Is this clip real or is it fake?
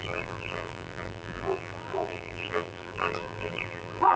fake